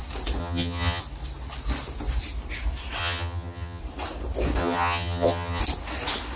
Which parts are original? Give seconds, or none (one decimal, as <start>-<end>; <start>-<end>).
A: 0.0-0.4; 1.0-3.0; 3.8-4.6; 5.6-6.4